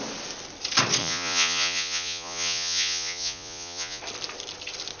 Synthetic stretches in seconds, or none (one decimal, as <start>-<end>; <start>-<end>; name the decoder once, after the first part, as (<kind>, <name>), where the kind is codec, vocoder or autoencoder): 1.0-4.0 (vocoder, Vocos)